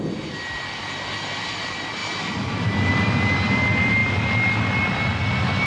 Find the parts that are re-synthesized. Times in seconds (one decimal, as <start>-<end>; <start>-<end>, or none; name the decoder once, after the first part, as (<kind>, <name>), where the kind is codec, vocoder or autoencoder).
none